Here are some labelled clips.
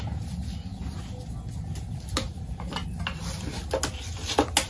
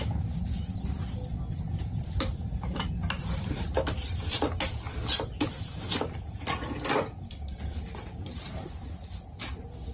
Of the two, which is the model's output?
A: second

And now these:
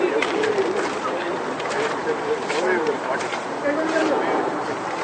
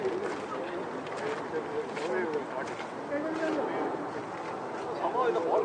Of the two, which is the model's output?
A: first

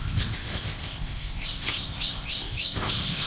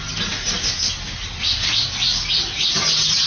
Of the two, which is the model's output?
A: first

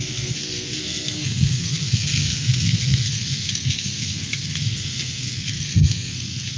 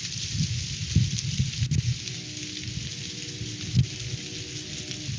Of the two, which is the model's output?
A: first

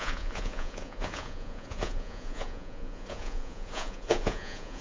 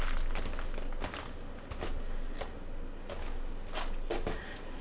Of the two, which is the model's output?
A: first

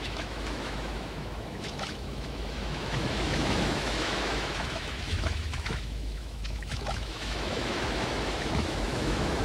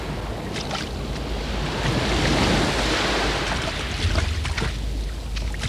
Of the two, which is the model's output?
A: first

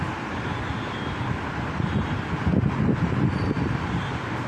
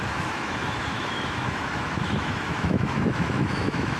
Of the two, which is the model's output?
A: second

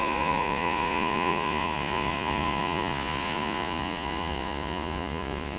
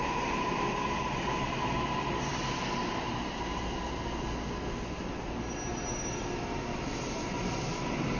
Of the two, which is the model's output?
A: first